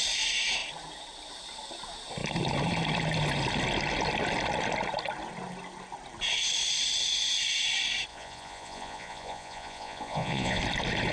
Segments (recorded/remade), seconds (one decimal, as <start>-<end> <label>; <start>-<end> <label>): 0.0-8.1 recorded; 8.1-10.6 remade; 10.6-11.1 recorded